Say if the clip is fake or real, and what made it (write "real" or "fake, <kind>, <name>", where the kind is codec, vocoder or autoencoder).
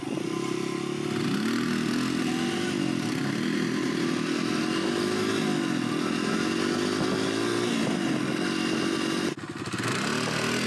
real